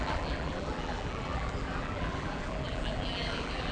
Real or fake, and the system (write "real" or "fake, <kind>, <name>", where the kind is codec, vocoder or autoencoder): fake, vocoder, BigVGAN v2